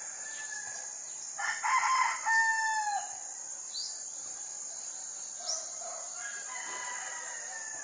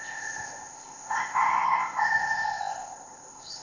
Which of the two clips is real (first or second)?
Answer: first